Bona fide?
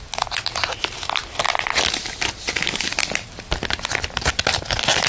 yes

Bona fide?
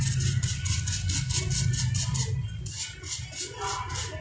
yes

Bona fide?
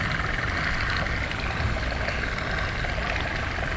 yes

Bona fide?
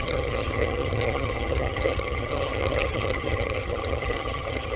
no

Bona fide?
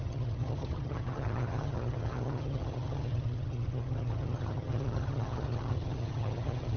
no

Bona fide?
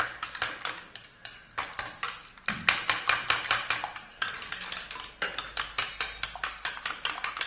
yes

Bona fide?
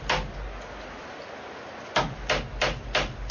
yes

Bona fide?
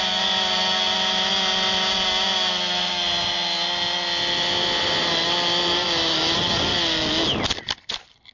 yes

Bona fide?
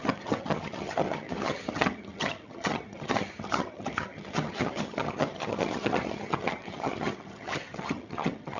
no